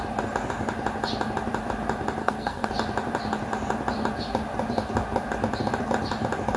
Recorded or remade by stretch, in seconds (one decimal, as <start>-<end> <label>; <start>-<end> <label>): 0.0-2.2 recorded; 2.2-2.7 remade; 2.7-6.6 recorded